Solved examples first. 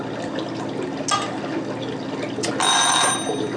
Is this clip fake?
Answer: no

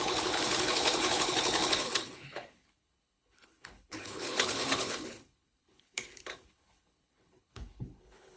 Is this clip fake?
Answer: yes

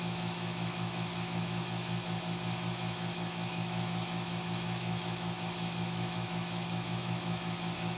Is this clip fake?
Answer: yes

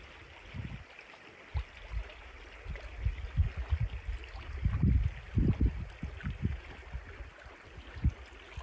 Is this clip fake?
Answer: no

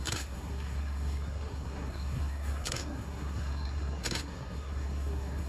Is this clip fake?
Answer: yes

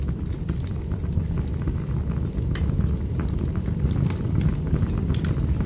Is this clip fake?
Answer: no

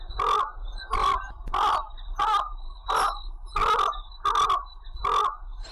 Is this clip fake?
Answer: no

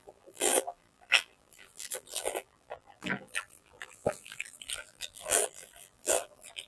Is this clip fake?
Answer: yes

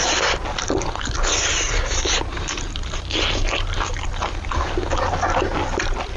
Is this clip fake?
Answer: no